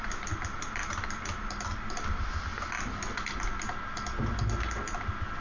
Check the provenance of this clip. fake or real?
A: real